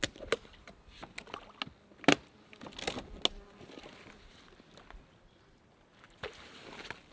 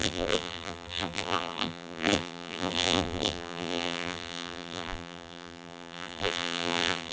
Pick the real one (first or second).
first